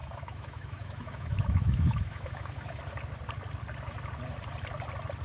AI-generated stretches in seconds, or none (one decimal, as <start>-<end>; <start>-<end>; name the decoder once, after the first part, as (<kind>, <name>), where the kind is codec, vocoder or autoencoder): 0.0-2.8 (autoencoder, DAC-VAE)